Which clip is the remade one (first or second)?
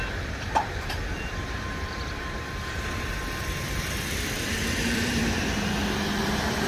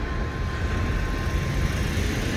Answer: first